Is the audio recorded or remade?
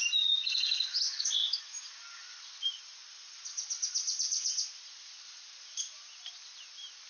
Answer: recorded